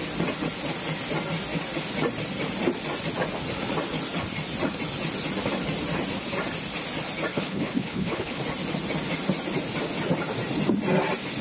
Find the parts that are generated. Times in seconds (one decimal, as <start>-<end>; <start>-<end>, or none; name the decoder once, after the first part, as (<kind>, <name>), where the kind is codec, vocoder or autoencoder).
7.3-8.4 (codec, HILCodec)